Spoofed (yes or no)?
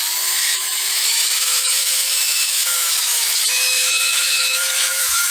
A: yes